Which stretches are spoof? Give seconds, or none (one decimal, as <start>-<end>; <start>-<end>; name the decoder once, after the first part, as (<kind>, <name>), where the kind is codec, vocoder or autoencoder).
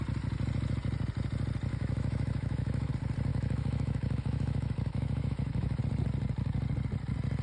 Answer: 1.7-2.9 (autoencoder, DAC-VAE); 3.3-5.8